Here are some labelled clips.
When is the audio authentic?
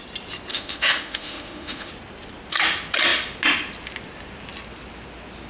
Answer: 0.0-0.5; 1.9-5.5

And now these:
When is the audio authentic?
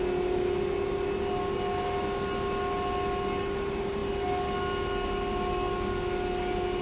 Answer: 0.0-6.8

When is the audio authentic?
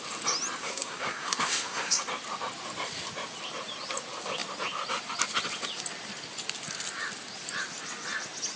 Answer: 0.0-0.6; 2.0-8.6